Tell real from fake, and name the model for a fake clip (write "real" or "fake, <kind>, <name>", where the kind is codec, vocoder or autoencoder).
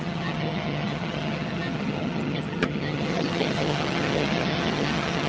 fake, vocoder, HiFi-GAN